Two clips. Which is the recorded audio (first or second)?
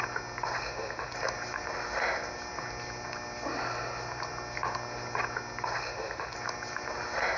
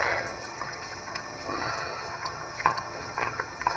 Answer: first